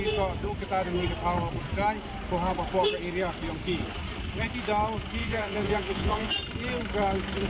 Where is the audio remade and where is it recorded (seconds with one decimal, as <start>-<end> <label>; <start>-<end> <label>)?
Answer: 0.0-5.2 recorded; 5.2-6.3 remade; 6.3-7.5 recorded

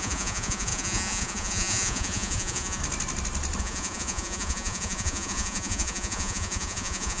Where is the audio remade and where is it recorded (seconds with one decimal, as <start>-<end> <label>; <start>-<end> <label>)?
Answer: 0.0-2.8 remade; 2.8-3.6 recorded; 3.6-7.2 remade